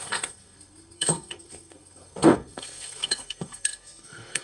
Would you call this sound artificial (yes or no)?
yes